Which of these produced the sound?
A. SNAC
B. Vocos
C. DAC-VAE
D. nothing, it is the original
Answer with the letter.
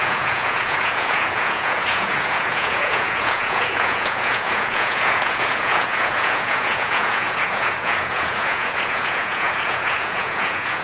B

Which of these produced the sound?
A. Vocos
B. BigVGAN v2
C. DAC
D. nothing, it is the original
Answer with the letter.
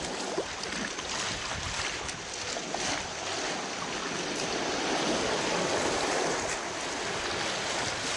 D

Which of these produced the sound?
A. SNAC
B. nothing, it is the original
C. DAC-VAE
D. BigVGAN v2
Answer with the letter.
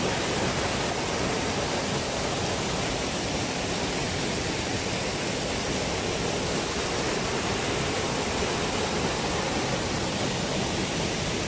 B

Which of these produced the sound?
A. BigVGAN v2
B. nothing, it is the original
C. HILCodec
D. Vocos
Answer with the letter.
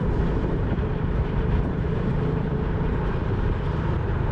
A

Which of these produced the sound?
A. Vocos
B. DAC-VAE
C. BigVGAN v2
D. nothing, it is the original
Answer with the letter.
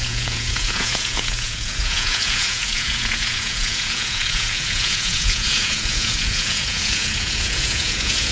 A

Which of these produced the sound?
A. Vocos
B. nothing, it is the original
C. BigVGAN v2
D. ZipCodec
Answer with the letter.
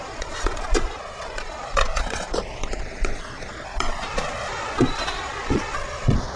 A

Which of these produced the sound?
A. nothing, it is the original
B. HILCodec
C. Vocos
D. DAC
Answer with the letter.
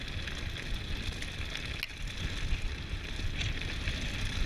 A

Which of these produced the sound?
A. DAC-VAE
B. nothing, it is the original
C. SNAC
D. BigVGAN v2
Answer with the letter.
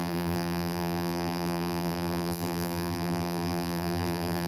D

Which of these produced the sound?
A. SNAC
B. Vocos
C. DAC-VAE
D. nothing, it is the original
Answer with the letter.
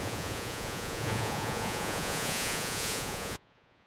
B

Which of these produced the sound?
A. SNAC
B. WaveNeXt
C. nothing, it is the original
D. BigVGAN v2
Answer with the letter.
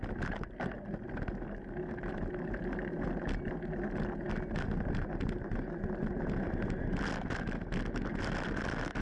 C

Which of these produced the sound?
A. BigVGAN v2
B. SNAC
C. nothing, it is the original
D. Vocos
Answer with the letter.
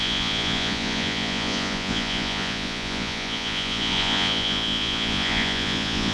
D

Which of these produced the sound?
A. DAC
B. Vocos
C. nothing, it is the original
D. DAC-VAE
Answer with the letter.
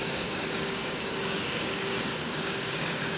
A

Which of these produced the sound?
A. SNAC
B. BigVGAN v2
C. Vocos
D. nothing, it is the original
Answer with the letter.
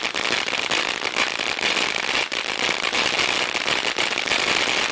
D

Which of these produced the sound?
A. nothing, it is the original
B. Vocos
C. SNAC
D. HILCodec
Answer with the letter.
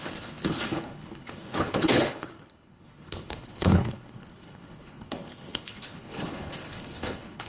D